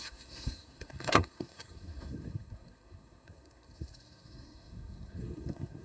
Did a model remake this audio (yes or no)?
yes